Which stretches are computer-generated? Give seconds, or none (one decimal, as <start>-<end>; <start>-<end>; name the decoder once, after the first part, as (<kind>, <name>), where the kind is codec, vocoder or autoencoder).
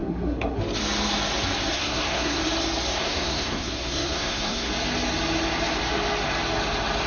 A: 0.0-0.6 (codec, SNAC); 1.7-2.4; 2.9-4.7